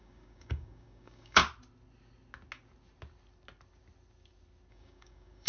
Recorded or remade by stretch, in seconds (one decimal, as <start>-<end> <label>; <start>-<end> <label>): 0.0-1.4 remade; 1.4-4.7 recorded; 4.7-5.5 remade